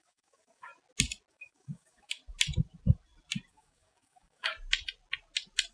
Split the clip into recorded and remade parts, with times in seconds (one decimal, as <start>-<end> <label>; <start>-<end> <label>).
0.0-0.7 remade; 0.7-1.3 recorded; 1.3-2.2 remade; 2.2-3.5 recorded; 3.5-4.5 remade; 4.5-5.7 recorded